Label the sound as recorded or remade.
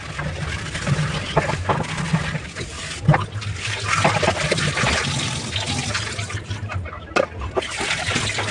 recorded